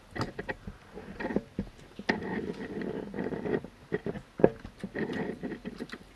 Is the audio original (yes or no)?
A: yes